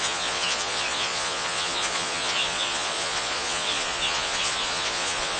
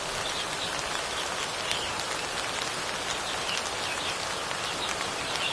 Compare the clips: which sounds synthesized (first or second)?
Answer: first